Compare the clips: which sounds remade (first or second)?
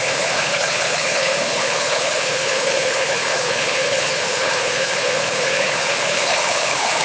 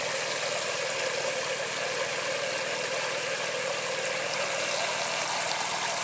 first